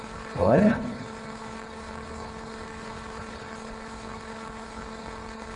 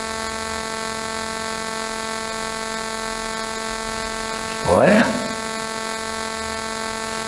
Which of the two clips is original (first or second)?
second